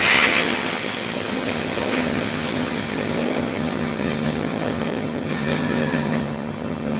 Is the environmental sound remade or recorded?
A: remade